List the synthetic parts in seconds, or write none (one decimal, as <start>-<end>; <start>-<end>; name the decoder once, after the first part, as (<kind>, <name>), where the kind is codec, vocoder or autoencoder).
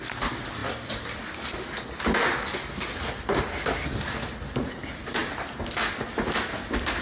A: none